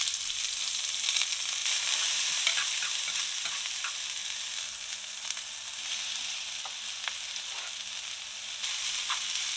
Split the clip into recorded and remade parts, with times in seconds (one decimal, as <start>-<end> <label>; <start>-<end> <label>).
0.0-9.6 recorded